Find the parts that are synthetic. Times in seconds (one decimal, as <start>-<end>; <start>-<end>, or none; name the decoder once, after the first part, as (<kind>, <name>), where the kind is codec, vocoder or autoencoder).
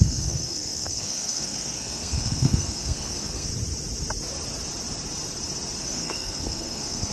0.0-3.5 (codec, SNAC); 5.8-7.1